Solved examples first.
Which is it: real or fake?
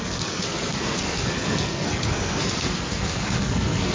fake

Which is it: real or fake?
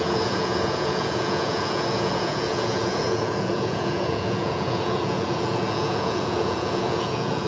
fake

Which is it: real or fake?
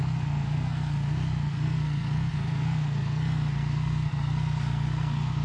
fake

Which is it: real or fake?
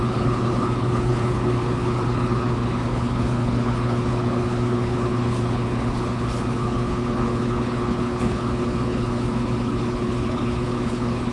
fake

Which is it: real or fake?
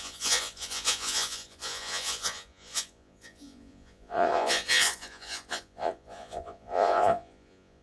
fake